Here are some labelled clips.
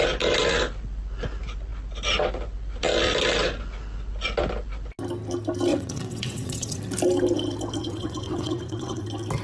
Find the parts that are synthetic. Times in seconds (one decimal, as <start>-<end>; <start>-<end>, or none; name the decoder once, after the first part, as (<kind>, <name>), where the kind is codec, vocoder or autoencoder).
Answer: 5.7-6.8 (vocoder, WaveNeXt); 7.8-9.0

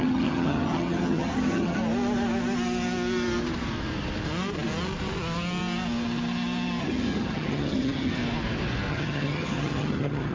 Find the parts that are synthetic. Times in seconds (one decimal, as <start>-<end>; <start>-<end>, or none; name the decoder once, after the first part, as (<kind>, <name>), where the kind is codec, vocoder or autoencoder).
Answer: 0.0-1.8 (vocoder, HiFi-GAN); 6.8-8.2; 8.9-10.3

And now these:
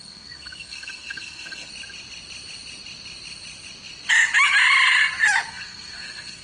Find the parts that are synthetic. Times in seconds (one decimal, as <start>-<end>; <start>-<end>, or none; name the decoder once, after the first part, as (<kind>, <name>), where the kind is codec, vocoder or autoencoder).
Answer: 0.0-1.7 (codec, SNAC); 5.5-6.4

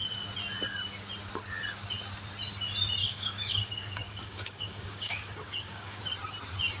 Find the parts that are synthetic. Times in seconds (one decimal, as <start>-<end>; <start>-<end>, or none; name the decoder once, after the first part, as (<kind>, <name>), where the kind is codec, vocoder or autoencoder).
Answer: 3.0-6.0 (codec, DAC)

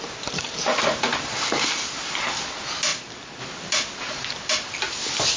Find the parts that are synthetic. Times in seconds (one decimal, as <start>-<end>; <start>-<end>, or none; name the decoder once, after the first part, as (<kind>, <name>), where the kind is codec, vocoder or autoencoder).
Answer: none

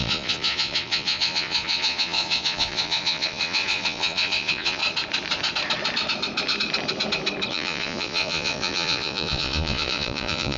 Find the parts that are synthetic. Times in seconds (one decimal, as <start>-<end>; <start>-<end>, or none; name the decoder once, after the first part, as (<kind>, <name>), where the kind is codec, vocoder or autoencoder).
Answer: 0.0-4.8 (vocoder, Vocos); 7.5-10.6

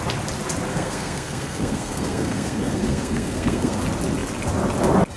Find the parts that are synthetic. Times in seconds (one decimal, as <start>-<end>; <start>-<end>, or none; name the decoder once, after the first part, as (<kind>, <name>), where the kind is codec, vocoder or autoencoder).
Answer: 0.7-3.8 (codec, SNAC)

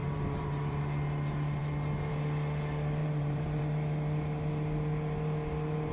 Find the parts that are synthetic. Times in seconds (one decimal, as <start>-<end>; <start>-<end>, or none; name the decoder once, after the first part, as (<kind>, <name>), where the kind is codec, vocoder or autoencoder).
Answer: 0.0-0.8 (vocoder, BigVGAN v2); 3.0-3.6